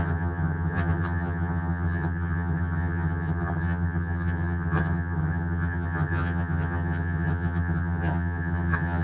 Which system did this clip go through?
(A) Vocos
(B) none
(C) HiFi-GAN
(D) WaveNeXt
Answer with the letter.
C